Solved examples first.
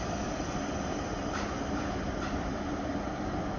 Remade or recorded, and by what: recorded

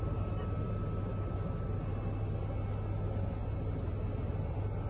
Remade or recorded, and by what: recorded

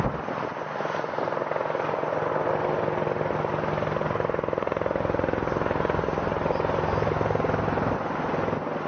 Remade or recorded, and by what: recorded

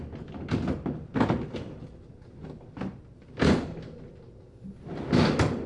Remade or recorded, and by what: recorded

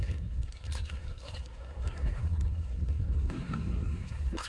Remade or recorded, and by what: remade, codec, SNAC